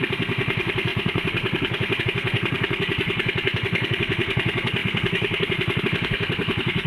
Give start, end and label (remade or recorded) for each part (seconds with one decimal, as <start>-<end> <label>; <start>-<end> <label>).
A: 0.0-6.9 remade